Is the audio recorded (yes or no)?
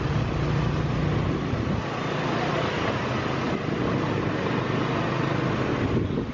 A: yes